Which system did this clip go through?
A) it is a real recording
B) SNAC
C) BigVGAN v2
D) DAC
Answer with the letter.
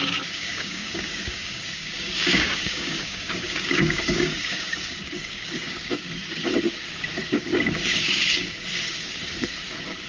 D